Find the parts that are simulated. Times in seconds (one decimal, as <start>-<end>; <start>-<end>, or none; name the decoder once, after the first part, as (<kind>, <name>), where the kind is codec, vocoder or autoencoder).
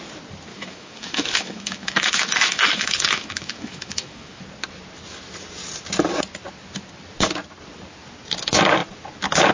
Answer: 0.5-4.4 (autoencoder, DAC-VAE)